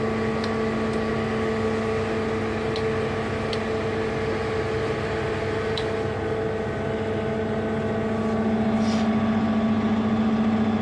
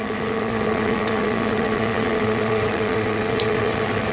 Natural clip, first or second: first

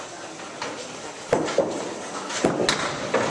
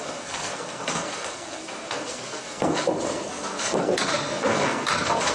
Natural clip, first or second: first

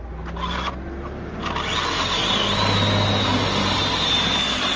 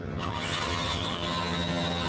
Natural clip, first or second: first